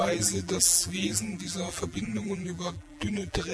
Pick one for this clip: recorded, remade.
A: remade